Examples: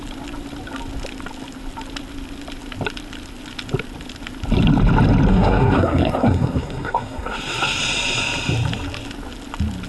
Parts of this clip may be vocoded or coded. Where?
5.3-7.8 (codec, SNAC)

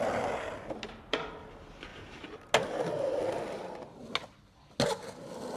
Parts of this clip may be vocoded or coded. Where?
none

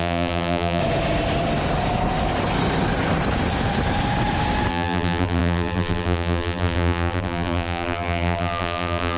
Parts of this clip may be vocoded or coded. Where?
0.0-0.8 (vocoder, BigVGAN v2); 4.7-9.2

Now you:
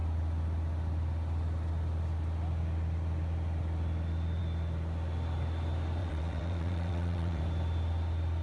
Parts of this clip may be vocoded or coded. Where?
6.0-7.4 (vocoder, WaveNeXt)

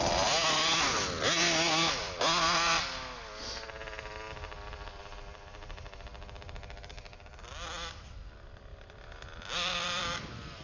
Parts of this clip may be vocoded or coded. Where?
0.0-2.7 (vocoder, BigVGAN v2); 5.0-6.1; 6.9-10.6

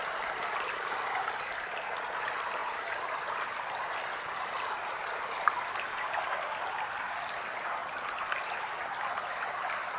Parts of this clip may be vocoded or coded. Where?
none